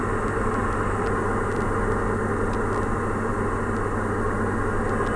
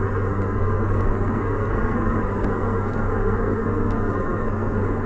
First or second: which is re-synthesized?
second